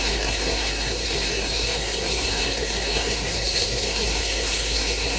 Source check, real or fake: fake